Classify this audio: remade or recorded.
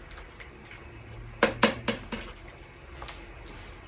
recorded